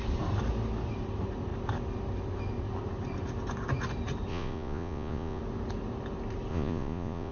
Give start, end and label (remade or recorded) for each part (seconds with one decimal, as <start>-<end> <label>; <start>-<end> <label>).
0.0-4.3 recorded; 4.3-5.4 remade; 5.4-6.5 recorded; 6.5-7.3 remade